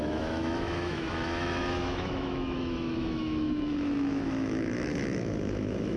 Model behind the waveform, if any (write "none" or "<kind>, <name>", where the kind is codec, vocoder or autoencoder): autoencoder, DAC-VAE